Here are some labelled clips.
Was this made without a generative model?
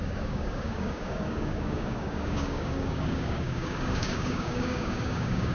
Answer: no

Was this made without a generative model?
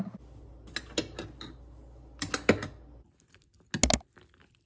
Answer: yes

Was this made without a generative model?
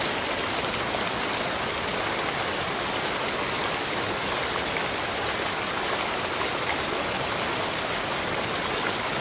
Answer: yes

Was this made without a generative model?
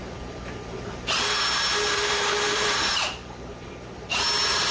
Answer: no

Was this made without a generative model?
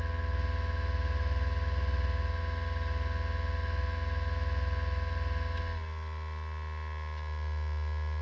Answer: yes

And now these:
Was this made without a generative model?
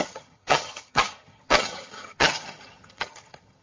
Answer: no